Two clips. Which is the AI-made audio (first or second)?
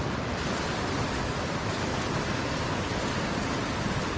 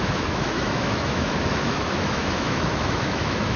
second